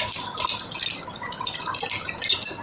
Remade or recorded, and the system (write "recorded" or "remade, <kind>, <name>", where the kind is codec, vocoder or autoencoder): recorded